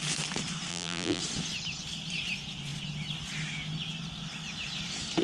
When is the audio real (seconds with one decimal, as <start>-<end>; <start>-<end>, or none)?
0.0-0.7; 1.2-5.2